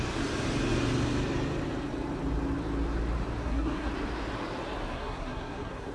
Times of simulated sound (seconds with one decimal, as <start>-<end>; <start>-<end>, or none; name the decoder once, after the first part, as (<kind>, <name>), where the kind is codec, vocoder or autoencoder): 3.4-3.9 (codec, SNAC); 4.9-5.9